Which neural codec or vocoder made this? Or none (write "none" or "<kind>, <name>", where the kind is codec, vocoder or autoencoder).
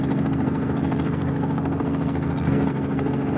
codec, SNAC